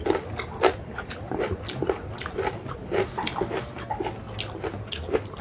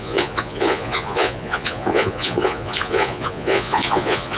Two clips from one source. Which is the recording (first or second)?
first